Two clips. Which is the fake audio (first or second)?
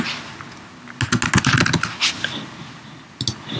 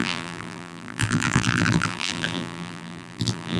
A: second